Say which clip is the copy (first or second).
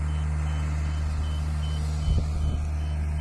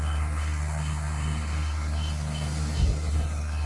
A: second